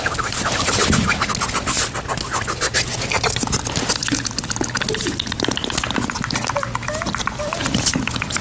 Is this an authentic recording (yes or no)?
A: yes